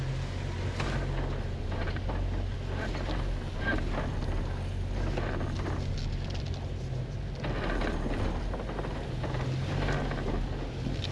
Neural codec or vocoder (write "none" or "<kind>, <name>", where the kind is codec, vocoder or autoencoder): none